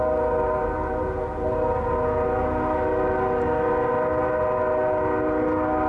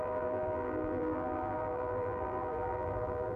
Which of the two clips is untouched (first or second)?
first